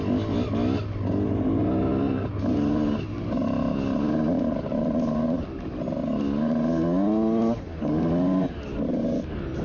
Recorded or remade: recorded